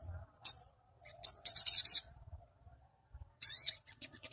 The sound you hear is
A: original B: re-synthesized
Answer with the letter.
B